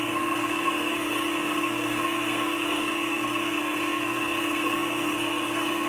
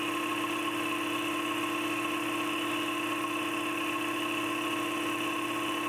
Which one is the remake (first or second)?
first